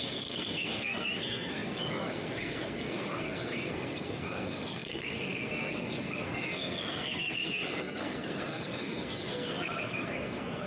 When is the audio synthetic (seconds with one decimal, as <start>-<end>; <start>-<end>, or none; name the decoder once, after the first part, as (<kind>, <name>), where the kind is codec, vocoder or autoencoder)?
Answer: 0.0-10.7 (codec, SNAC)